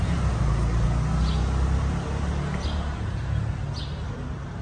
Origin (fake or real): real